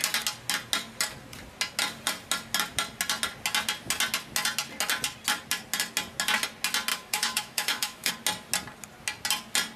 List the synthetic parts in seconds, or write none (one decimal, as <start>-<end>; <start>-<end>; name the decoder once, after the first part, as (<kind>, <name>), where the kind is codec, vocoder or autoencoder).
6.9-8.1 (autoencoder, DAC-VAE)